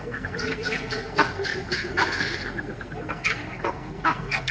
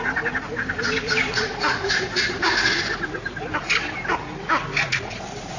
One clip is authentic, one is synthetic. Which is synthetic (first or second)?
first